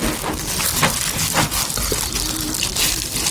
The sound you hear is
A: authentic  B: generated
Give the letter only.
A